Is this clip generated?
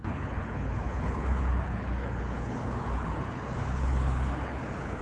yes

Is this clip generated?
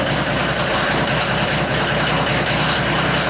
no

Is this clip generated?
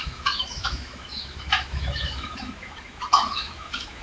yes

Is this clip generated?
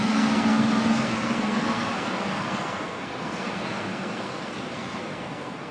yes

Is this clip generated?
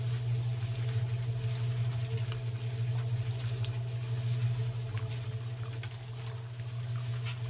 no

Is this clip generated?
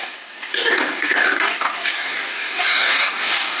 yes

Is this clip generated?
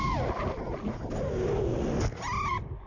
no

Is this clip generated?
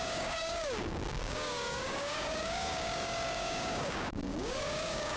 yes